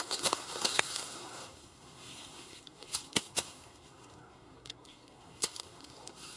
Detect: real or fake fake